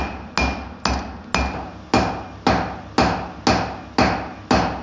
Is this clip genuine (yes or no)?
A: yes